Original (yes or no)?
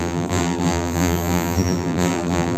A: no